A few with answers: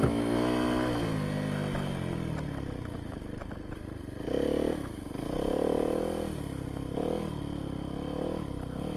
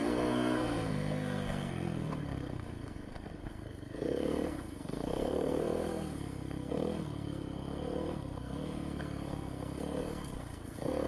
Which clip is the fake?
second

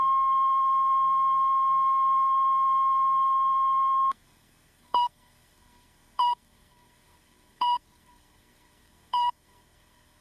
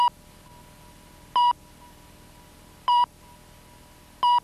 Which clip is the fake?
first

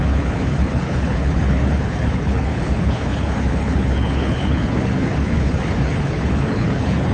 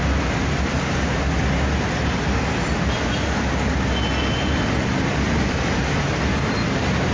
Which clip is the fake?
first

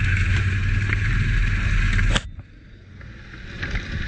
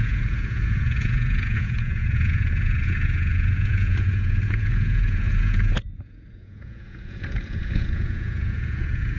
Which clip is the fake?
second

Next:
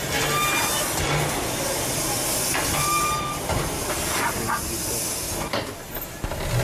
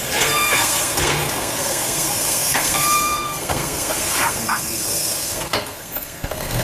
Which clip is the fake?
second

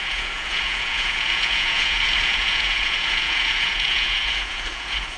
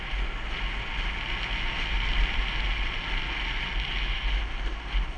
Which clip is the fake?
first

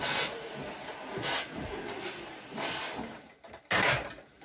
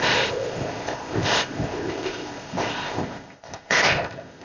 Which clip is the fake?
second